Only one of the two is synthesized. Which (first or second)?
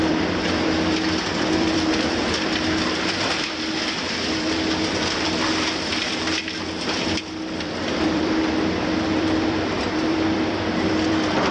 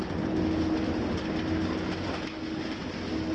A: first